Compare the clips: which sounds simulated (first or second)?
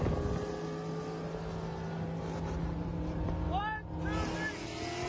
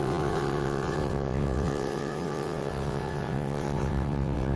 second